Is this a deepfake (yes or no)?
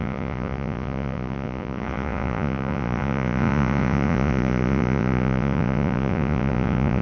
yes